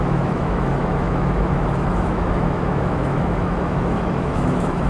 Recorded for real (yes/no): no